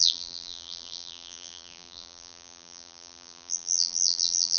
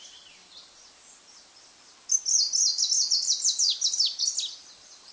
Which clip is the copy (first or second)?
first